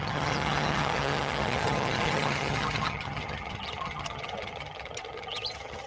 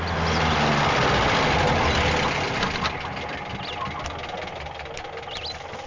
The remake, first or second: first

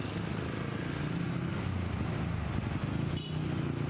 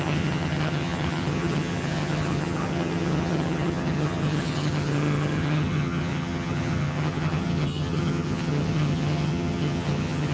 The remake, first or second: second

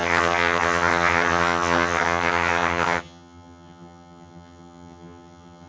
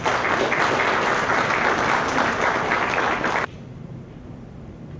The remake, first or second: first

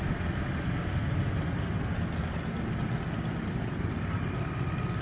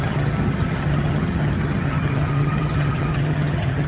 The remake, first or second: second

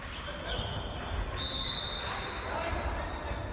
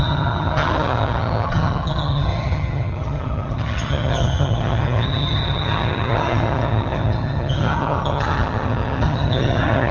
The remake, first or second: second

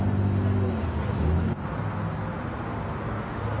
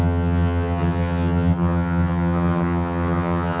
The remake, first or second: second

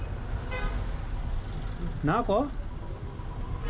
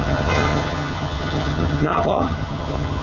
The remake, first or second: second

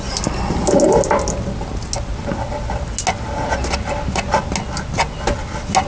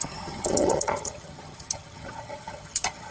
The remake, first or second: second